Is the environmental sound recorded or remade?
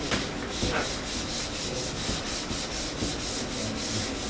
recorded